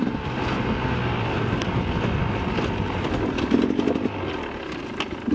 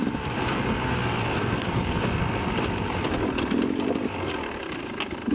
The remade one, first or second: second